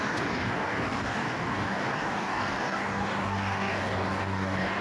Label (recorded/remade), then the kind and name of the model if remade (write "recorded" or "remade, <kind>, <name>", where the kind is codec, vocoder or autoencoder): remade, codec, DAC